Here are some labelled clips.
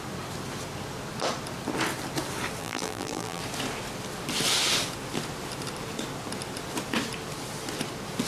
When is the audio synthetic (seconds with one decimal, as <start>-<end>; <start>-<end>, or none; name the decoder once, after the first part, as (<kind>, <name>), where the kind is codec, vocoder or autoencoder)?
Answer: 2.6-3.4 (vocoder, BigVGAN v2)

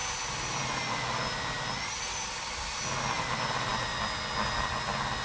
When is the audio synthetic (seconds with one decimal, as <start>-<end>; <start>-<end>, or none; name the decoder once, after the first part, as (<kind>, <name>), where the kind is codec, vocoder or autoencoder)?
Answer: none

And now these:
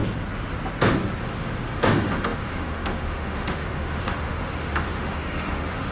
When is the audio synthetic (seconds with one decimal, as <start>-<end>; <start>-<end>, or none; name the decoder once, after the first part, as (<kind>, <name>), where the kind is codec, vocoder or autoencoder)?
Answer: 1.2-5.9 (autoencoder, DAC-VAE)